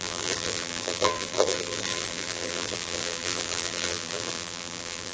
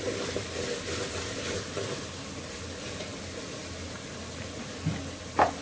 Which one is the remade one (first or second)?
first